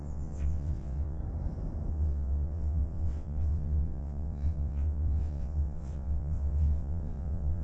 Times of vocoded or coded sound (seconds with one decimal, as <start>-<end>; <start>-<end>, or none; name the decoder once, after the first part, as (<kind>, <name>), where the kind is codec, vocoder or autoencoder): 0.0-1.2 (vocoder, WaveNeXt); 1.9-7.6